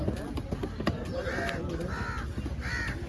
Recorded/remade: recorded